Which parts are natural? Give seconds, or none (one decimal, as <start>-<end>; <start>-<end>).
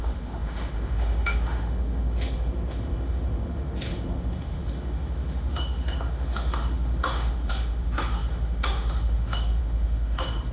none